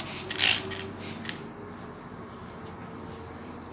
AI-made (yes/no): no